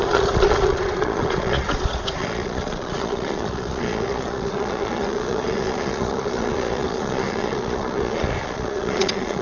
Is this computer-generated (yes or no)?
yes